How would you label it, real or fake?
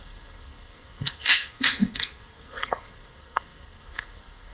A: fake